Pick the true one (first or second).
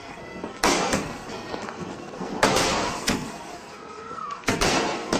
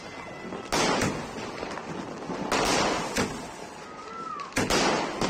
second